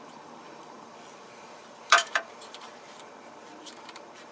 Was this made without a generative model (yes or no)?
no